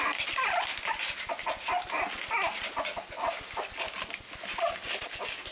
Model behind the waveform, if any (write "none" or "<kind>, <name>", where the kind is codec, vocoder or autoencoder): none